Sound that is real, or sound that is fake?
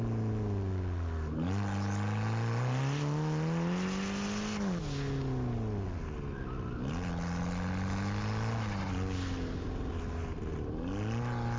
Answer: real